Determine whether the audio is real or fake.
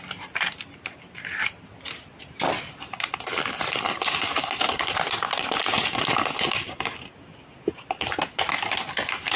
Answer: real